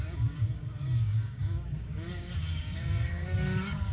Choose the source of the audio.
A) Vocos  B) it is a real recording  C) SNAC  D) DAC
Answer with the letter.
D